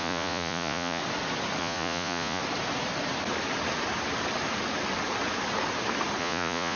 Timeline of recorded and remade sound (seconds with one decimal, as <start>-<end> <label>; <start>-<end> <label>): 0.0-1.0 remade; 1.0-1.6 recorded; 1.6-2.4 remade; 2.4-6.2 recorded; 6.2-6.8 remade